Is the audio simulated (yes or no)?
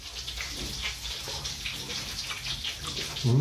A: no